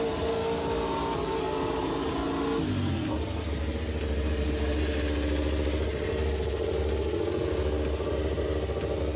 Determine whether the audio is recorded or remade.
recorded